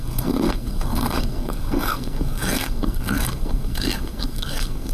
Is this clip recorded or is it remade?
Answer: remade